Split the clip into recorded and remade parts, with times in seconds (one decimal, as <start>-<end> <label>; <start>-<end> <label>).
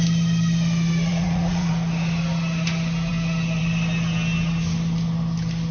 0.0-1.1 recorded; 1.1-1.7 remade; 1.7-5.7 recorded